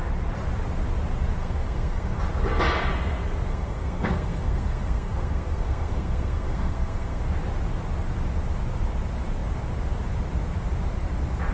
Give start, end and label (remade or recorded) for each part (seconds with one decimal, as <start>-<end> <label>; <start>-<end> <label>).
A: 0.0-1.4 recorded; 1.4-2.2 remade; 2.2-3.5 recorded; 3.5-7.2 remade; 7.2-11.5 recorded